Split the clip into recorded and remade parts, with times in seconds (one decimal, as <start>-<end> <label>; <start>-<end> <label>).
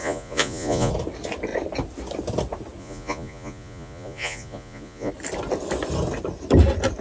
0.0-0.9 remade; 0.9-2.8 recorded; 2.8-5.1 remade; 5.1-7.0 recorded